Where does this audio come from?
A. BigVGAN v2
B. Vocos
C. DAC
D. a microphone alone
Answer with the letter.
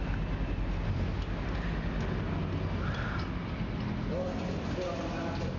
D